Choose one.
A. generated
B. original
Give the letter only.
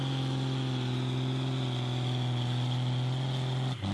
B